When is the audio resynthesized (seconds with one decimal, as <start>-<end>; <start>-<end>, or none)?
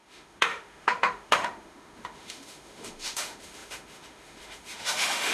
0.0-5.3